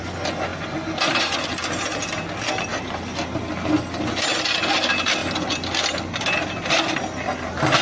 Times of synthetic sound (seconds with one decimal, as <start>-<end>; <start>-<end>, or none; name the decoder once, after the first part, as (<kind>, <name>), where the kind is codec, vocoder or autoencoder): none